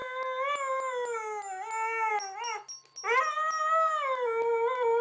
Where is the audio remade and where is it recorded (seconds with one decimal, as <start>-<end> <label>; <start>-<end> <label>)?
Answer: 0.0-5.0 recorded